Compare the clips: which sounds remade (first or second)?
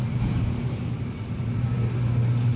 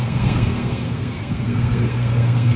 second